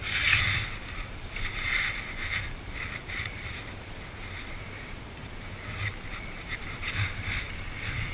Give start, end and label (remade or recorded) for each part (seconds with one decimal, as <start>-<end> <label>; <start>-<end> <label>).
0.0-1.9 recorded; 1.9-3.6 remade; 3.6-6.4 recorded; 6.4-8.1 remade